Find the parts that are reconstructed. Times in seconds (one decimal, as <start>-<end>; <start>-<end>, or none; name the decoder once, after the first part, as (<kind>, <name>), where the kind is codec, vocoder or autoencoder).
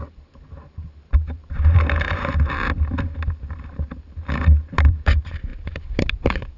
0.0-6.6 (vocoder, BigVGAN v2)